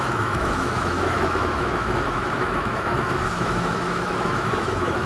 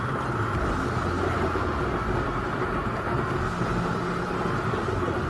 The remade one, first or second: first